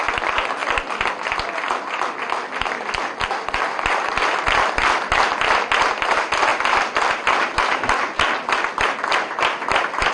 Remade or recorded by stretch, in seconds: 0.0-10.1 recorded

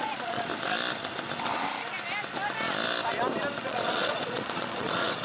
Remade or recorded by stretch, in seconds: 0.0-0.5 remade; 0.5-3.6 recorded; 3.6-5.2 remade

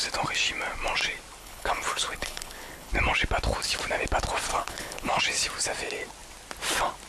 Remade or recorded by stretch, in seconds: 0.0-1.4 recorded; 1.4-2.9 remade; 2.9-4.5 recorded; 4.5-5.2 remade; 5.2-7.1 recorded

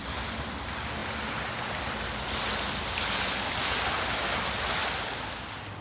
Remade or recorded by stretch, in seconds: 0.0-5.8 recorded

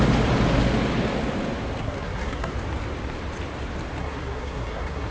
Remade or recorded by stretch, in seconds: 0.0-1.8 recorded; 1.8-2.5 remade; 2.5-4.0 recorded; 4.0-5.1 remade

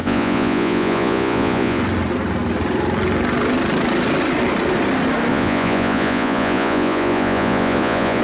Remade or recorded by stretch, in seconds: 0.0-1.8 remade; 1.8-5.3 recorded; 5.3-8.2 remade

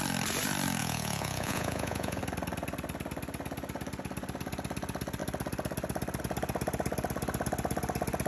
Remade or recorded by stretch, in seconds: 0.0-0.8 recorded; 0.8-2.2 remade; 2.2-8.3 recorded